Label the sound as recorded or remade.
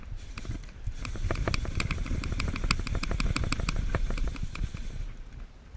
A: recorded